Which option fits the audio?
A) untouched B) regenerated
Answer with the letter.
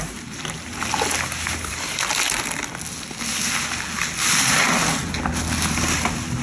A